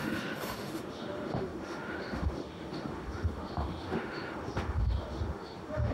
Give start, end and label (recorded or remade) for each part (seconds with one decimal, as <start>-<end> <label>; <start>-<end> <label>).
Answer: 0.0-5.9 remade